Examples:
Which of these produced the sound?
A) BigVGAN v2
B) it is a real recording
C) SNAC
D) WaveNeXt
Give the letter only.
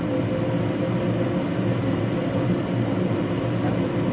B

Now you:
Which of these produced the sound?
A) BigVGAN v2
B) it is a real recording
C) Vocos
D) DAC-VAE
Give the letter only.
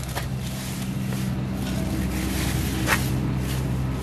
B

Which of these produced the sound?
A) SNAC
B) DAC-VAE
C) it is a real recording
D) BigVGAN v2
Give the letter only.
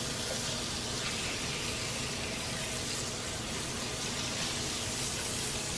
C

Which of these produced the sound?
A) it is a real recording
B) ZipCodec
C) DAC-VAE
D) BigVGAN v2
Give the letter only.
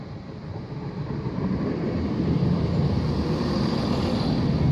A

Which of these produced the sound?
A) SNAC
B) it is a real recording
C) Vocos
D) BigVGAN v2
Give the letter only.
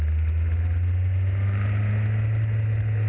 B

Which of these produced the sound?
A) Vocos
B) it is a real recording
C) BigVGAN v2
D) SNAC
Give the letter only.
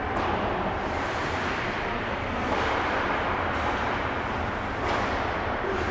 C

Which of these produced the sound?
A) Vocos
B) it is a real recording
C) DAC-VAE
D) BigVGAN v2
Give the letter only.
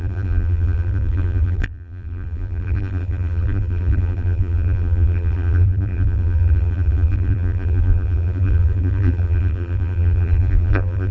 D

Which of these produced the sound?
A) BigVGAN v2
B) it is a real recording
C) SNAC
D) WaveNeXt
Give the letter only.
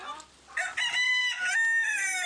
B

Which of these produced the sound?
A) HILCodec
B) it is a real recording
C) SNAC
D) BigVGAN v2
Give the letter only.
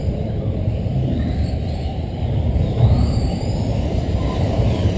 D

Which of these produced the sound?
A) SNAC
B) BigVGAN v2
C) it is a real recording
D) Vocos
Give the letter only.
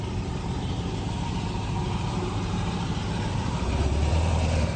B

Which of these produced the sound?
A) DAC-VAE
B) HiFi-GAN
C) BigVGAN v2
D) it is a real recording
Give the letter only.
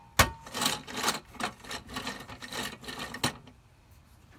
D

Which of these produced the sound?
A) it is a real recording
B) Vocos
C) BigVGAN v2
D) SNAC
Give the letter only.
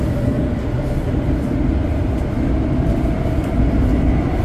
A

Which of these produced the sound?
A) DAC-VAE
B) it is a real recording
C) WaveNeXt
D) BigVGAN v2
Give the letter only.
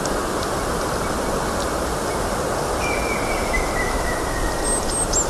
B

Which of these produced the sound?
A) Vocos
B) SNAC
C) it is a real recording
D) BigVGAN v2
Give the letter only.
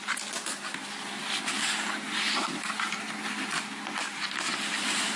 C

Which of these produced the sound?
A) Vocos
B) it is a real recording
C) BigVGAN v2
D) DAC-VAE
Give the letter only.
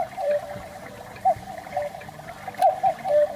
C